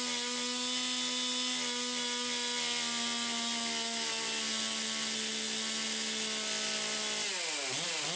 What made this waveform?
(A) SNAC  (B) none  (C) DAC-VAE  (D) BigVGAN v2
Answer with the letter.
B